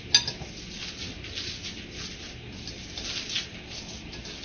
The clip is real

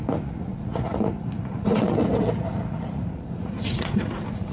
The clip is fake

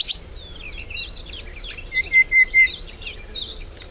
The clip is real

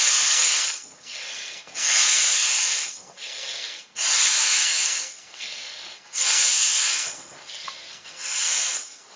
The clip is fake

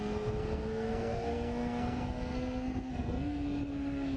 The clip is fake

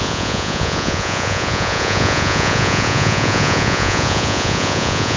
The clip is fake